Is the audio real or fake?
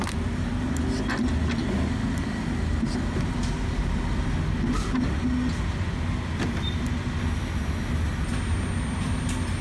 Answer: real